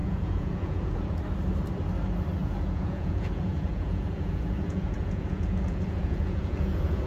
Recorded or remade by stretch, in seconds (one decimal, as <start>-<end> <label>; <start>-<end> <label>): 0.0-1.2 remade; 1.2-2.4 recorded; 2.4-7.1 remade